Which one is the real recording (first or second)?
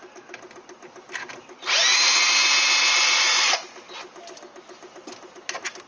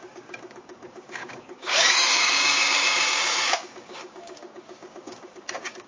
first